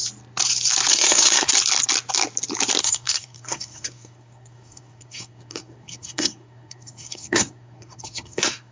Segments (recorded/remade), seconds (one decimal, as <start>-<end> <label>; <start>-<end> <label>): 0.0-0.9 recorded; 0.9-1.5 remade; 1.5-2.8 recorded; 2.8-8.7 remade